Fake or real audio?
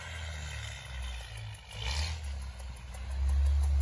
real